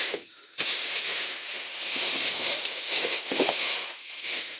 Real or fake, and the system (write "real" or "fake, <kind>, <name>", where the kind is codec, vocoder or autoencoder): fake, autoencoder, DAC-VAE